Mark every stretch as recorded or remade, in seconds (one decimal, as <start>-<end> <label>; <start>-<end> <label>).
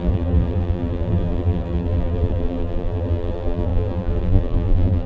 0.0-5.1 remade